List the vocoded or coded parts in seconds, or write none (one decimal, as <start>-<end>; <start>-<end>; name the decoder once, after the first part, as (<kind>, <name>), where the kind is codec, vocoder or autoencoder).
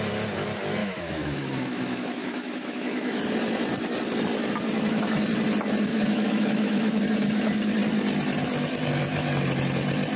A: 0.8-3.2 (autoencoder, DAC-VAE); 5.9-7.0